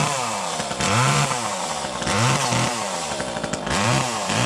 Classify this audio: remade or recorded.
remade